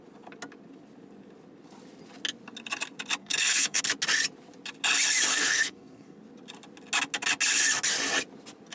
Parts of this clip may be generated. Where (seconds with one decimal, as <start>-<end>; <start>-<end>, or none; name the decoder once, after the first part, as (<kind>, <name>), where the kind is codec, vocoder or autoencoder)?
3.2-3.8 (codec, SNAC); 5.3-6.2